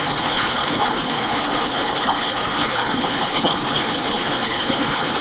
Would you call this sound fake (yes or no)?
yes